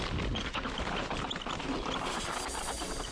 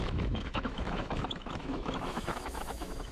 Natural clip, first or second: first